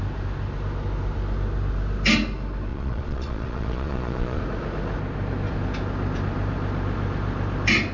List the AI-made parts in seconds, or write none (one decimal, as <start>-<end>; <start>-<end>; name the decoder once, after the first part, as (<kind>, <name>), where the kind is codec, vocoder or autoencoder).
2.7-4.4 (vocoder, Vocos)